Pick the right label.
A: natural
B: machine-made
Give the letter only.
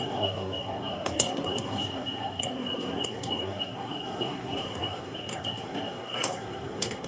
B